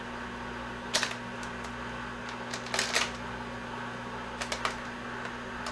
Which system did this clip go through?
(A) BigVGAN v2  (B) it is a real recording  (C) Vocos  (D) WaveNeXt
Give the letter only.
B